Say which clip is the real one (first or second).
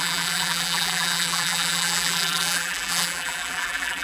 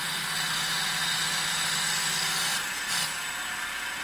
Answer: second